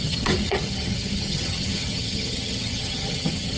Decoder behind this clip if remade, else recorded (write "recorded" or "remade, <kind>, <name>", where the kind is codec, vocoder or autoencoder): remade, vocoder, HiFi-GAN